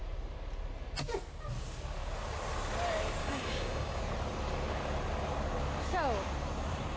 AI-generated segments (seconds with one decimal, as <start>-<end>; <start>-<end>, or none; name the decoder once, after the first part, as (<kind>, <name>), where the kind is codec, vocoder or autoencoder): 3.2-4.0 (codec, DAC)

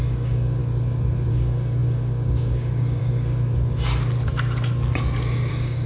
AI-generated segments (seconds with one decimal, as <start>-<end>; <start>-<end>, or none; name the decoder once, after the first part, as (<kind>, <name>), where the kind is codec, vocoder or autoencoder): 0.0-0.6 (codec, DAC); 1.3-3.0; 5.5-5.9

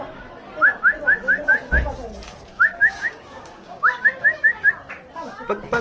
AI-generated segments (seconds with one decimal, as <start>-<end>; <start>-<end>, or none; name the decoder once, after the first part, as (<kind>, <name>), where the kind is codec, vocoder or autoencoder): 2.5-4.7 (codec, DAC)

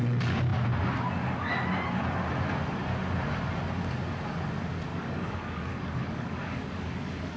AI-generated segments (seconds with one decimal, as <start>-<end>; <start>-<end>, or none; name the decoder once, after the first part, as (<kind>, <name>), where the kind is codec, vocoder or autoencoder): 4.9-7.4 (codec, DAC)

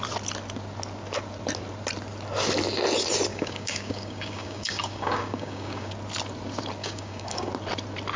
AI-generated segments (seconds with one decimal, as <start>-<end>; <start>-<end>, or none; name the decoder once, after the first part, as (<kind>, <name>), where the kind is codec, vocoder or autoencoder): 3.3-5.9 (codec, DAC); 6.8-7.5

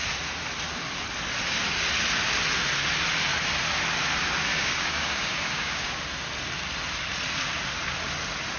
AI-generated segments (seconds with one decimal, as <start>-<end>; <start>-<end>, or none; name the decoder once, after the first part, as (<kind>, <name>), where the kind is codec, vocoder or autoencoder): 4.5-6.0 (codec, DAC)